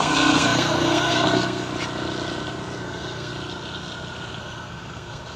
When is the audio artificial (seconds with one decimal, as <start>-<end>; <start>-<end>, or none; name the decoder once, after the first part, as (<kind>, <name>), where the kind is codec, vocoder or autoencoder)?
0.0-1.7 (codec, SNAC); 2.8-3.3; 4.4-5.4